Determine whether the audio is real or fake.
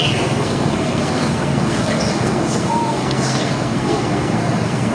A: fake